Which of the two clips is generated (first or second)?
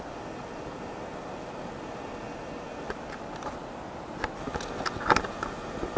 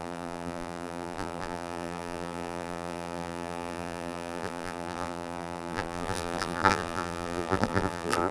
second